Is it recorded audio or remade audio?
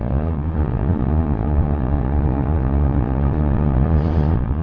remade